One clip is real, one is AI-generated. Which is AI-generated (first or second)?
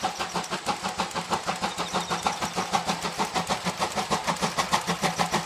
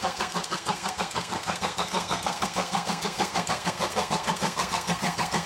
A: second